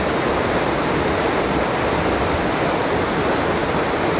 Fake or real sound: real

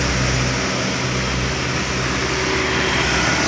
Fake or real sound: real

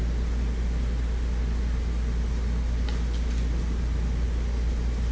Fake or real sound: real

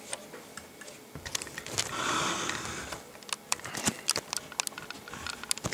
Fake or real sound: real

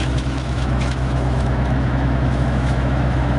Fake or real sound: fake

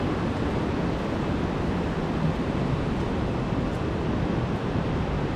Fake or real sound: real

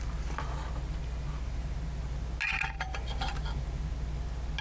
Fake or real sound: real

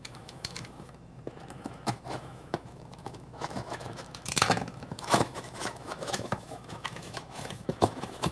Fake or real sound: fake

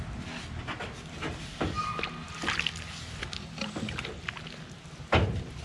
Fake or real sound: real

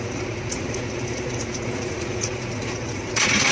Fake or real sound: fake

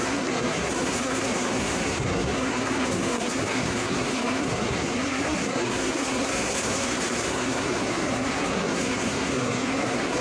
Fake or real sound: fake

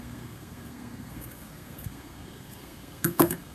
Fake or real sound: fake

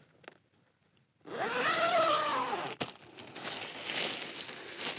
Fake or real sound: real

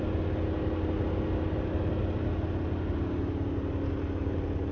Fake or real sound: real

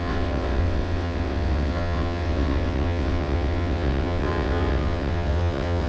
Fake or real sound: fake